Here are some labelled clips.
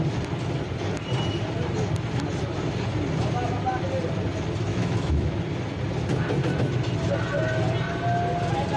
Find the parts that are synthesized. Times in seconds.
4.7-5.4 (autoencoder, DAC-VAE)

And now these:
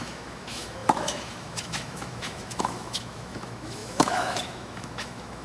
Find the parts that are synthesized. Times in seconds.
0.0-5.4 (autoencoder, DAC-VAE)

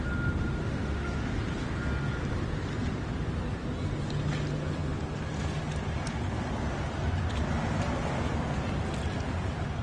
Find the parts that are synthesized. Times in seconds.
0.6-1.3 (autoencoder, DAC-VAE)

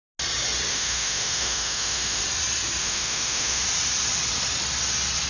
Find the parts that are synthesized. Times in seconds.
0.7-2.2 (autoencoder, DAC-VAE); 2.8-3.6

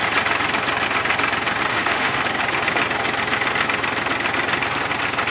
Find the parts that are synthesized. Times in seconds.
1.7-2.2 (autoencoder, DAC-VAE)

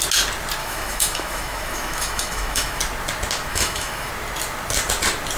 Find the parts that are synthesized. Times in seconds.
0.6-2.8 (autoencoder, DAC-VAE); 3.5-4.1

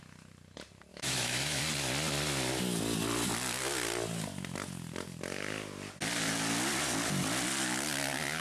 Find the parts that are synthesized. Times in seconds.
0.9-1.6 (autoencoder, DAC-VAE)

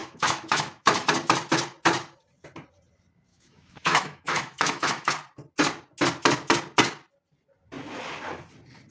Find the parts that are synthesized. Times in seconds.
0.0-1.1 (autoencoder, DAC-VAE); 3.3-5.1